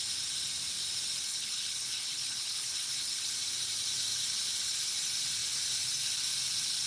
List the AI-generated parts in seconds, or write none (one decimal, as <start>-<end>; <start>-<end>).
1.3-3.2